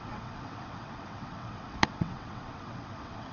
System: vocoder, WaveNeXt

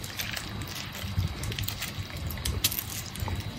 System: none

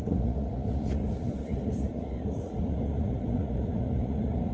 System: vocoder, Vocos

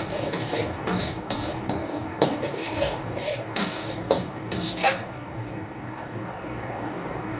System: codec, DAC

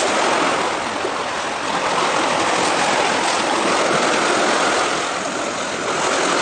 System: none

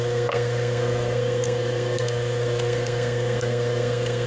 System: codec, SNAC